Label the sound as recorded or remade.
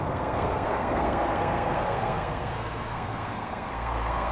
remade